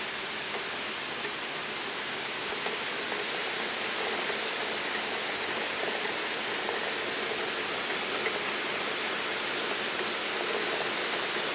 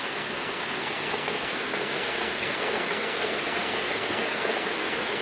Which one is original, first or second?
first